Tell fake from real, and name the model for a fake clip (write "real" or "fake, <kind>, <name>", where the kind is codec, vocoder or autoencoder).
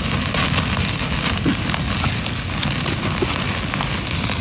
real